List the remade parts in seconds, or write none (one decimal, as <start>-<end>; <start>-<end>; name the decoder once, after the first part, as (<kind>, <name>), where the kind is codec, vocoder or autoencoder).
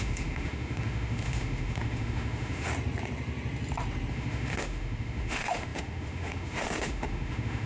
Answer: 0.0-2.7 (autoencoder, DAC-VAE); 4.1-7.7